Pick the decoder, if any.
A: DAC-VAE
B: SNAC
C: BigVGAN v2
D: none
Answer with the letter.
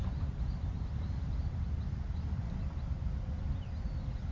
D